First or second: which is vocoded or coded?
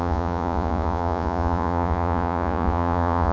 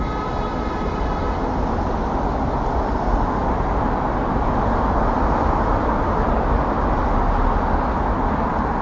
first